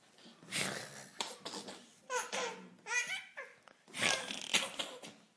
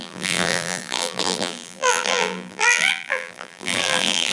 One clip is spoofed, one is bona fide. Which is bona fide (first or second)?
first